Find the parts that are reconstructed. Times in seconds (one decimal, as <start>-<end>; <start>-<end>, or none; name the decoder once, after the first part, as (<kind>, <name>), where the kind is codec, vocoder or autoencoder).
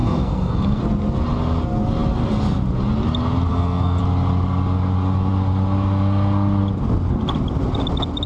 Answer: 0.0-0.8 (codec, SNAC); 3.5-4.0